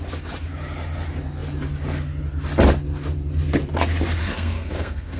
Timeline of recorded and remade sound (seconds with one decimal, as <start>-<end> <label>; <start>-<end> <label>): 0.0-4.2 recorded; 4.2-5.2 remade

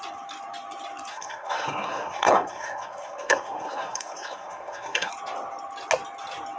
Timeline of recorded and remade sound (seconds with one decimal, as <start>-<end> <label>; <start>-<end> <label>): 0.0-1.1 recorded; 1.1-5.1 remade; 5.1-6.6 recorded

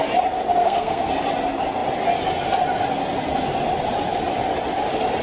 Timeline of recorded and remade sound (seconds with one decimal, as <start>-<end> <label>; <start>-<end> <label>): 0.0-0.6 recorded; 0.6-1.1 remade; 1.1-5.2 recorded